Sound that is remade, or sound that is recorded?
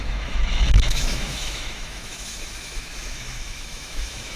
remade